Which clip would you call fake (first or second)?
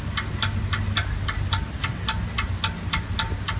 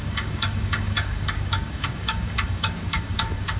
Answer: second